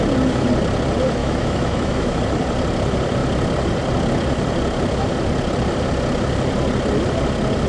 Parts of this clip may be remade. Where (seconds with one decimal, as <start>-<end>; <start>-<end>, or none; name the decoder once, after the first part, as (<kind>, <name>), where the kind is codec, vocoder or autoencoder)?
1.2-2.2 (autoencoder, DAC-VAE)

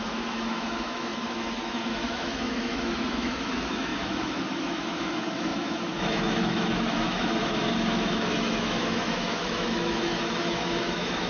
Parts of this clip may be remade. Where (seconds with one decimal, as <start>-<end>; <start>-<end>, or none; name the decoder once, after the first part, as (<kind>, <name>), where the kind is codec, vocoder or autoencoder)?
0.0-11.3 (autoencoder, DAC-VAE)

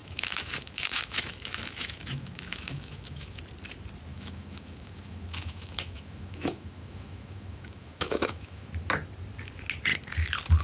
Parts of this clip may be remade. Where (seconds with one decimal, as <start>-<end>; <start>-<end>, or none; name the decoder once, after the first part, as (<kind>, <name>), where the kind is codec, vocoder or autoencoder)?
0.0-3.4 (autoencoder, DAC-VAE); 4.1-8.7

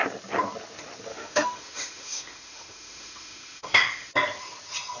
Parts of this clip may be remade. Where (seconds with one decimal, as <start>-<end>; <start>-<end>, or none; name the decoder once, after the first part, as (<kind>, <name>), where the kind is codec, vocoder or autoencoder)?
1.1-4.1 (autoencoder, DAC-VAE)

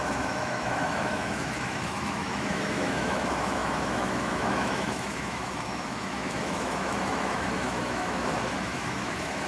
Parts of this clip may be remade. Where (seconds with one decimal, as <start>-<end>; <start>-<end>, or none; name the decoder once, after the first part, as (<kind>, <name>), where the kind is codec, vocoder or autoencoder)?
0.0-9.5 (autoencoder, DAC-VAE)